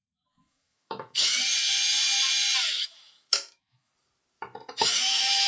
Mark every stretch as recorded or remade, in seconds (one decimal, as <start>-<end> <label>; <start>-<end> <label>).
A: 0.0-1.3 remade; 1.3-2.7 recorded; 2.7-3.9 remade; 3.9-4.7 recorded; 4.7-5.5 remade